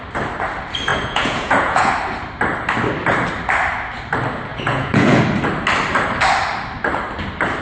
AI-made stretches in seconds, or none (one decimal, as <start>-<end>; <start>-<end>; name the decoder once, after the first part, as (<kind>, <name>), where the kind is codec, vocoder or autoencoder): 0.9-1.9 (vocoder, Vocos); 4.5-5.2